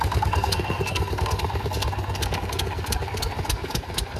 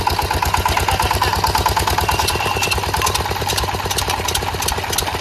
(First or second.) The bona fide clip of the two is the second